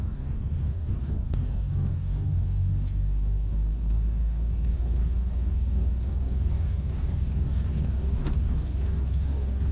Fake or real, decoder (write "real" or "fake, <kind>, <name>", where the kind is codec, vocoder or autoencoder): fake, codec, DAC